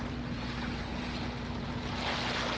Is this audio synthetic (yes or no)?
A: no